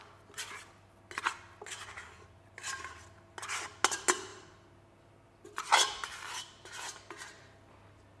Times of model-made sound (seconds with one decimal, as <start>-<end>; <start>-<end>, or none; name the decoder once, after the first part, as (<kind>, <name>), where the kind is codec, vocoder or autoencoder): none

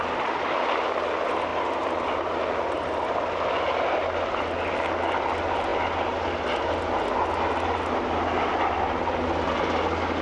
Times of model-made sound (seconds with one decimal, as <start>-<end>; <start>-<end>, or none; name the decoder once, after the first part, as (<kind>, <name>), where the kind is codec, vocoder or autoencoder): none

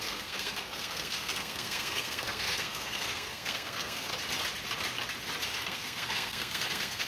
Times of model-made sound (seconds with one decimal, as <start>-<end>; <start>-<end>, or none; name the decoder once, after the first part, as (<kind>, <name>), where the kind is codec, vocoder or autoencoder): 0.0-4.1 (codec, SNAC); 5.5-7.1

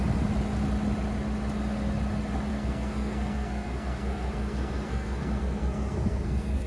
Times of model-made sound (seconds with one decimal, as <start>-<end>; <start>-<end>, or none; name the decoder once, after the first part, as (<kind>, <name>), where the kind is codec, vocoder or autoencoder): 2.5-6.7 (codec, SNAC)

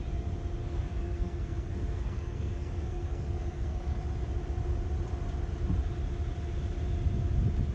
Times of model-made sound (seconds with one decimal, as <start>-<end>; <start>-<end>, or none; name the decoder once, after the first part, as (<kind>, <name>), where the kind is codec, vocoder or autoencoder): 0.6-4.0 (codec, SNAC)

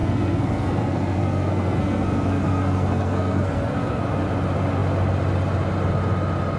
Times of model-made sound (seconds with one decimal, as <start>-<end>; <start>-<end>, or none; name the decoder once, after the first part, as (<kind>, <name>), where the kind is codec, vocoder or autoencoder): 0.0-4.0 (codec, SNAC)

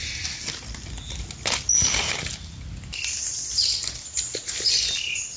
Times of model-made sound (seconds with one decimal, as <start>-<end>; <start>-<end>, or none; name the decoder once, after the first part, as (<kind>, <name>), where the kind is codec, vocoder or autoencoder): none